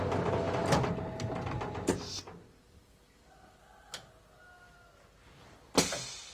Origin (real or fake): real